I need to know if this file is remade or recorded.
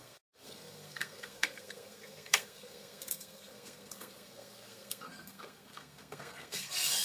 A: remade